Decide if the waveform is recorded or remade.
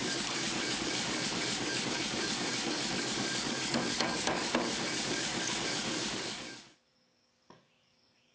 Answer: remade